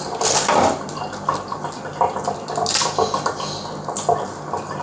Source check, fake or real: real